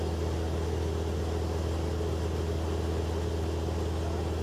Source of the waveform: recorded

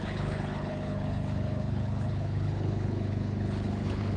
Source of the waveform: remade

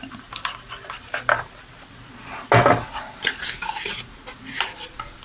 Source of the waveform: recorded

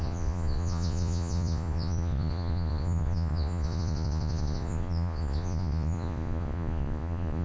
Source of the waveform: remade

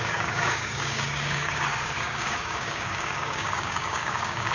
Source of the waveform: remade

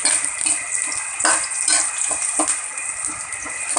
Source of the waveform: recorded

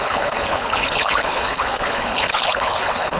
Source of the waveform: remade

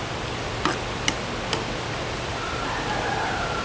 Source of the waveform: recorded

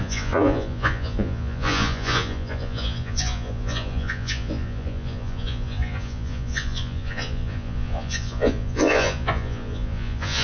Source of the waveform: remade